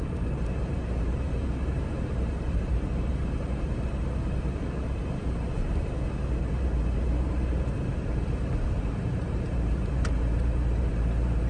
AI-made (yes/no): yes